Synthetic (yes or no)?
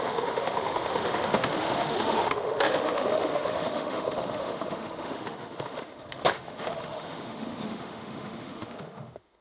yes